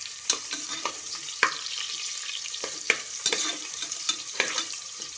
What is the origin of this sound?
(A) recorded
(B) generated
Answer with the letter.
B